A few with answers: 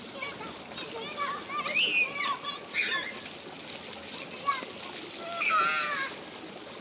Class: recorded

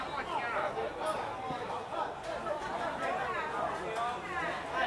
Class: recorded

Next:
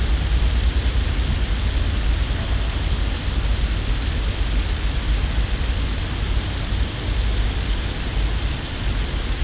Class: remade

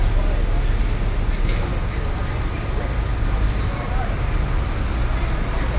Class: recorded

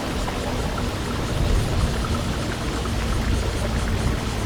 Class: recorded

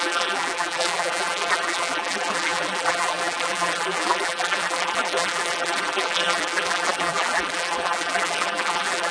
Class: remade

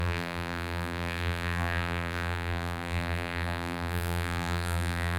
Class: remade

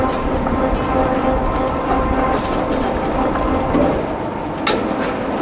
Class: recorded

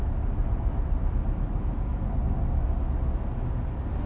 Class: recorded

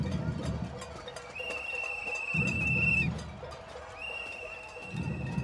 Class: recorded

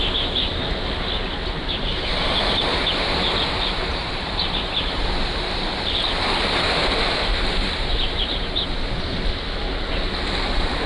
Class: recorded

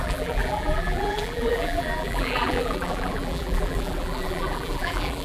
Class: remade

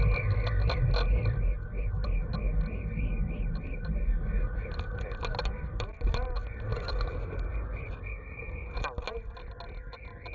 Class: recorded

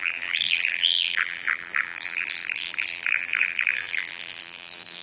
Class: remade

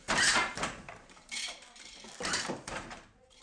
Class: remade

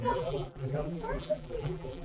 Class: remade